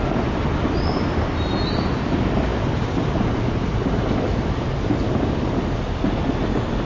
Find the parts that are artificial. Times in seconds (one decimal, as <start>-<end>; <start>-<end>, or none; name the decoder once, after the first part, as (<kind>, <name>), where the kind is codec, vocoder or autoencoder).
none